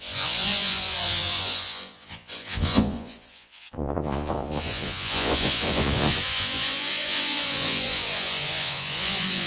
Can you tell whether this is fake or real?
fake